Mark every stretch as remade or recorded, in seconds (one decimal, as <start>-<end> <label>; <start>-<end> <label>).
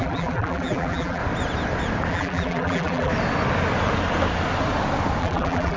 0.0-1.2 remade; 1.2-2.1 recorded; 2.1-3.1 remade; 3.1-5.2 recorded; 5.2-5.8 remade